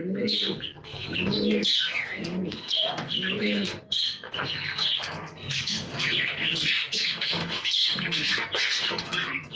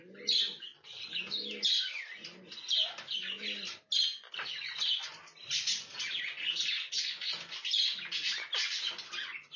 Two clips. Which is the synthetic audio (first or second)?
first